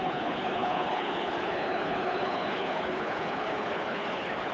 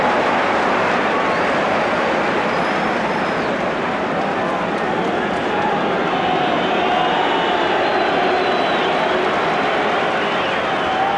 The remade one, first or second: first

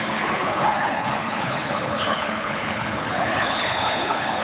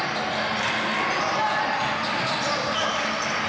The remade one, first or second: first